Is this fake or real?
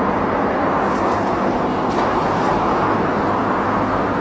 real